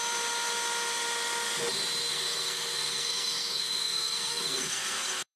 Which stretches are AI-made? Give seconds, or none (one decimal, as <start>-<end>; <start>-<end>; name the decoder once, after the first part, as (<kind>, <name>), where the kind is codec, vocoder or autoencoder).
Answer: 2.1-5.4 (codec, SNAC)